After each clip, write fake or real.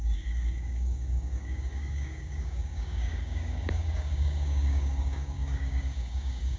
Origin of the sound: fake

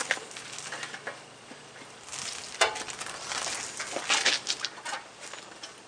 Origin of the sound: real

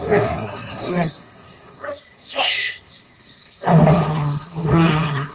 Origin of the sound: fake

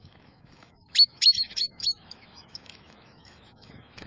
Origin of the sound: fake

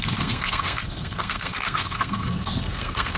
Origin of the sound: fake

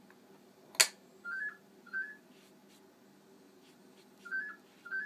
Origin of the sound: real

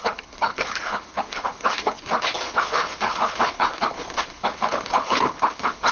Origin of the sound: fake